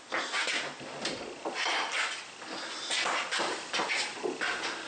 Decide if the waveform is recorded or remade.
recorded